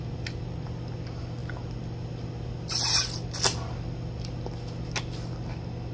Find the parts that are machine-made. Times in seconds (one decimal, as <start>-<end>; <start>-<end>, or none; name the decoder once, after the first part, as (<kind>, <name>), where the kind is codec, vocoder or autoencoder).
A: none